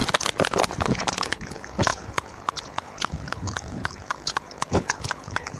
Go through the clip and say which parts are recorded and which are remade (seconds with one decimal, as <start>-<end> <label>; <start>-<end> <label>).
0.0-0.8 recorded; 0.8-5.6 remade